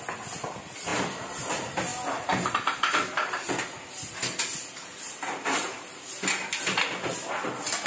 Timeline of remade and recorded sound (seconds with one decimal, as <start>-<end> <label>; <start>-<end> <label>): 0.0-7.9 recorded